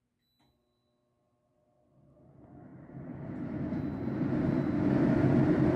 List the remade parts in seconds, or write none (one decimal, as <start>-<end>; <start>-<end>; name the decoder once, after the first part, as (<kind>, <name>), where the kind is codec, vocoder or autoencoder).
none